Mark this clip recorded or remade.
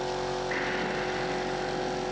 recorded